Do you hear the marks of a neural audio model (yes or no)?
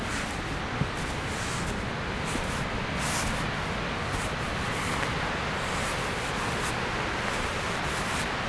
no